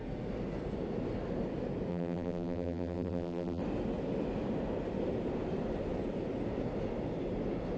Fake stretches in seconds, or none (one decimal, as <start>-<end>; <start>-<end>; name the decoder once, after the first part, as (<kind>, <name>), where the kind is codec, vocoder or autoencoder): 1.9-3.6 (vocoder, BigVGAN v2)